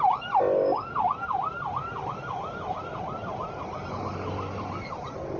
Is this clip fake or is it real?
real